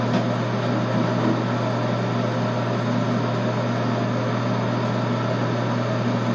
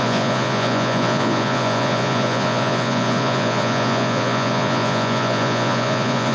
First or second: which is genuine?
first